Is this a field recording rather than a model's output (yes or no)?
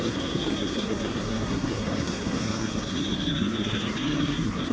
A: no